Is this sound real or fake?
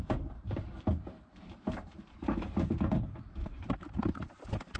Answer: fake